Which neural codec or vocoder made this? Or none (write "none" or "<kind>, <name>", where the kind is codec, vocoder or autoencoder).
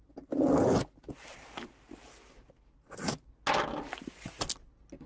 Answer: none